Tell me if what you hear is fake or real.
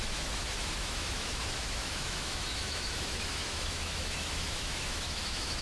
fake